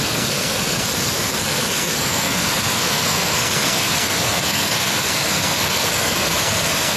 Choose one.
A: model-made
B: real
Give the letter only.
A